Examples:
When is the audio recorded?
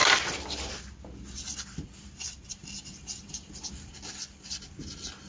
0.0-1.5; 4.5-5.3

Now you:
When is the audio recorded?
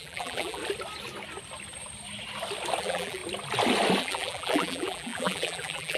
0.6-2.8; 3.2-4.0